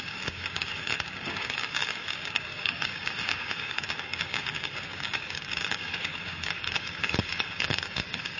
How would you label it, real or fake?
fake